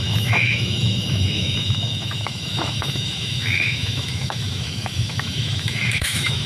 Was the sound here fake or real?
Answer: fake